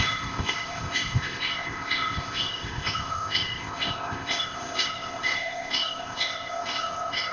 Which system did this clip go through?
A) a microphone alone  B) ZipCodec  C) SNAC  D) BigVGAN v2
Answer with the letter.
B